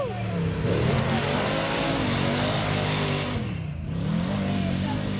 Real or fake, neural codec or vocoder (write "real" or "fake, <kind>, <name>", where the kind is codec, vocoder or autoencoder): real